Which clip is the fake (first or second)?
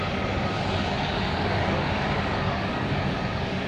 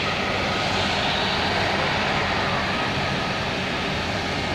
first